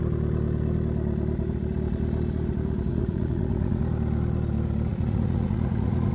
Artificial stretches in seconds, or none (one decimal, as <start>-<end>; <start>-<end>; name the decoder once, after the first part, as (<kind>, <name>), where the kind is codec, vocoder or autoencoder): 2.9-3.8 (vocoder, Vocos); 4.9-6.1